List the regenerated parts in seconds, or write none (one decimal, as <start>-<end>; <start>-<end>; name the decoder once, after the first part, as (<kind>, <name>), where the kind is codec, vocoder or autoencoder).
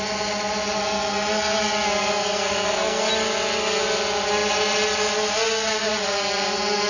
2.2-3.1 (codec, SNAC)